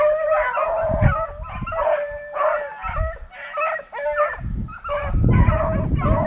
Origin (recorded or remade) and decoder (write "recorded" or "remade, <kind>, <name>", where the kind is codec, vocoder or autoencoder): recorded